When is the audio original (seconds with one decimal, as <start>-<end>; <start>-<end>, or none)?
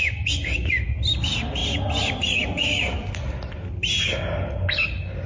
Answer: 0.0-5.3